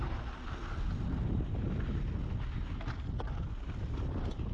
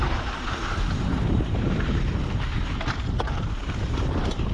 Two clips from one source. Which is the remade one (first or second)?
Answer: second